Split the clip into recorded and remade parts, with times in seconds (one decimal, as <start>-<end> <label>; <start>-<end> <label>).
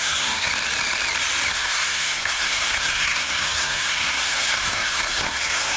0.0-0.5 remade; 0.5-1.5 recorded; 1.5-5.8 remade